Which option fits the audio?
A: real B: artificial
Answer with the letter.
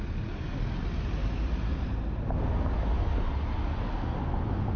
A